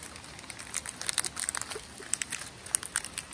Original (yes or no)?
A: yes